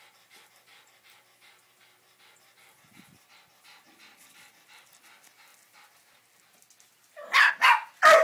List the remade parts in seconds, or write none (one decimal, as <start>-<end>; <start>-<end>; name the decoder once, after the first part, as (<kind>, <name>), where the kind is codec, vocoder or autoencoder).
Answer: none